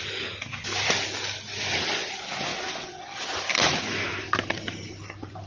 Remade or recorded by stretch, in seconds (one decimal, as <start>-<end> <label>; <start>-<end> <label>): 0.0-5.5 recorded